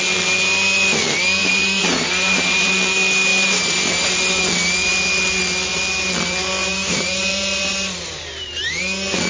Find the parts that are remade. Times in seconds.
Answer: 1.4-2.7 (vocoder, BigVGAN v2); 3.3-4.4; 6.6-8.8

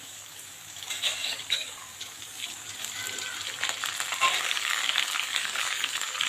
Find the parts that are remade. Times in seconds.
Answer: 0.0-3.0 (codec, DAC); 4.4-6.3

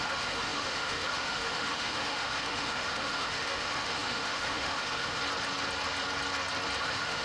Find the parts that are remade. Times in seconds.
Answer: 0.0-5.2 (autoencoder, DAC-VAE); 6.8-7.2

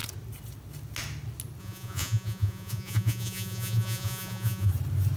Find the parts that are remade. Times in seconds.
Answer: 1.6-4.7 (vocoder, Vocos)

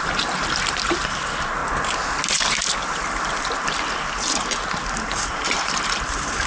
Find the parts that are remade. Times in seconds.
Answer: 0.0-1.6 (vocoder, BigVGAN v2); 4.9-6.5

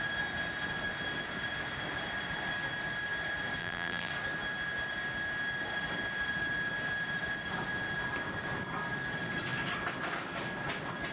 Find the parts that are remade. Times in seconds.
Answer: 3.6-4.1 (vocoder, BigVGAN v2)

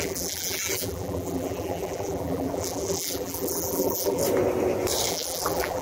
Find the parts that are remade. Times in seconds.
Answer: 0.0-4.2 (vocoder, BigVGAN v2); 5.1-5.8

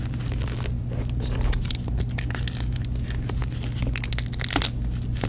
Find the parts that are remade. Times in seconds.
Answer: none